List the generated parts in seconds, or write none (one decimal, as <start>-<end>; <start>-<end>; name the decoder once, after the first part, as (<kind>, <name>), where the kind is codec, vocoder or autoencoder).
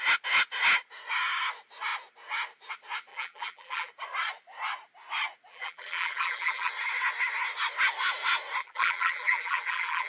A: 3.1-3.9 (vocoder, BigVGAN v2); 5.5-6.7; 8.6-10.1